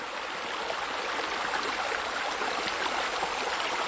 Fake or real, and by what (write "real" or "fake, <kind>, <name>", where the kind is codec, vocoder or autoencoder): real